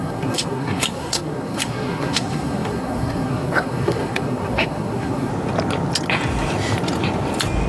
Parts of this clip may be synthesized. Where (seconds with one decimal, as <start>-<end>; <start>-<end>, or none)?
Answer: 0.0-5.3